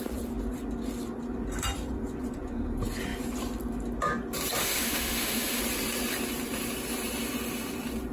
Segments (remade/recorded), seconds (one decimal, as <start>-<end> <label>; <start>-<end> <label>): 0.0-4.6 recorded; 4.6-5.6 remade; 5.6-8.1 recorded